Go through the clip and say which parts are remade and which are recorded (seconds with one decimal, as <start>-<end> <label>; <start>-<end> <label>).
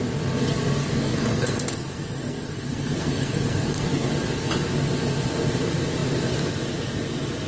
0.0-0.8 recorded; 0.8-4.1 remade; 4.1-7.5 recorded